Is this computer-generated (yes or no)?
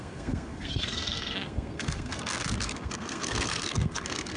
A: yes